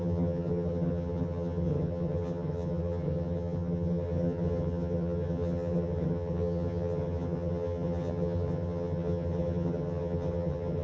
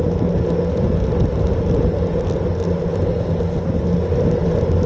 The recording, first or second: second